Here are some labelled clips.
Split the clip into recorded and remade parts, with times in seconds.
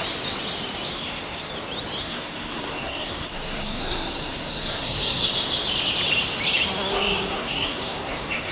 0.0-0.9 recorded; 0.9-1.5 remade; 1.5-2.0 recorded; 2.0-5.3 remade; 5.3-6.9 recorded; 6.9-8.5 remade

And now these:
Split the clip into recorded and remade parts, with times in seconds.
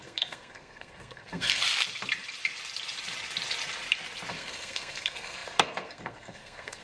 0.0-1.6 remade; 1.6-4.3 recorded; 4.3-6.8 remade